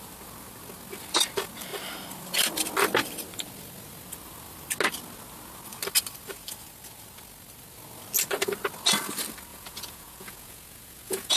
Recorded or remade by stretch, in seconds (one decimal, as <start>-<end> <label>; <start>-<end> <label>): 0.0-9.5 recorded; 9.5-11.4 remade